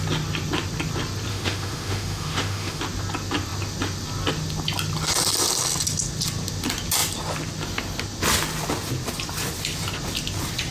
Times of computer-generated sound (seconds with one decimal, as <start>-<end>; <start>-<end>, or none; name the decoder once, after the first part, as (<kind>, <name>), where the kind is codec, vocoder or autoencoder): 1.3-2.8 (autoencoder, DAC-VAE)